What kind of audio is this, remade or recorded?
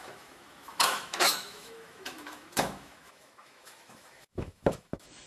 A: remade